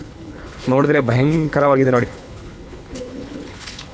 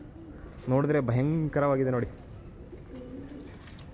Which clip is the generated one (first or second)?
first